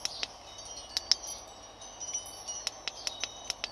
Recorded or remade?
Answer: recorded